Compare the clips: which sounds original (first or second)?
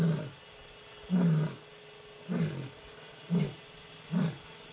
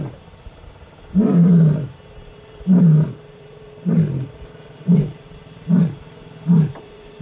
first